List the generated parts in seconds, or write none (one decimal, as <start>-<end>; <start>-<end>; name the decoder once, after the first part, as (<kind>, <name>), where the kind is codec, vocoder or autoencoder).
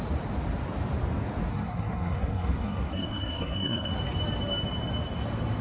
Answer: 1.5-3.9 (codec, SNAC)